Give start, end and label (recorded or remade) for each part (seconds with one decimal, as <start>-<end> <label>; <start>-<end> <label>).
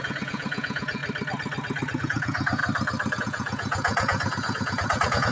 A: 0.0-1.0 remade; 1.0-2.0 recorded; 2.0-2.6 remade; 2.6-3.2 recorded; 3.2-5.3 remade